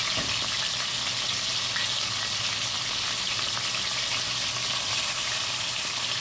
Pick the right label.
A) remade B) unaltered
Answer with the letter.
B